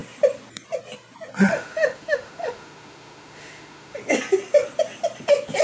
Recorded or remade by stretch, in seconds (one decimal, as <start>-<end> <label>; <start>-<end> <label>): 0.0-1.5 recorded; 1.5-4.0 remade; 4.0-5.6 recorded